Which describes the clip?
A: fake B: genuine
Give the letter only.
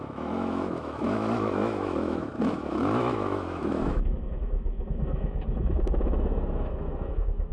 A